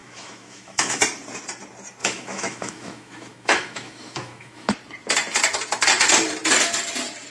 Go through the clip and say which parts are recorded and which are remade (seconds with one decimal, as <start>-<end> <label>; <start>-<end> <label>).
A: 0.0-1.0 remade; 1.0-2.0 recorded; 2.0-4.7 remade; 4.7-7.3 recorded